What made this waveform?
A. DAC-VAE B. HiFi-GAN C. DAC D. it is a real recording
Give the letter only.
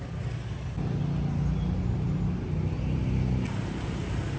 D